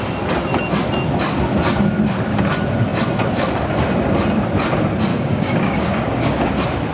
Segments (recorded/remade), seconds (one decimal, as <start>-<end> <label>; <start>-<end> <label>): 0.0-5.1 recorded; 5.1-6.5 remade; 6.5-6.9 recorded